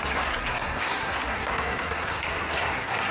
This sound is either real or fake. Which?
fake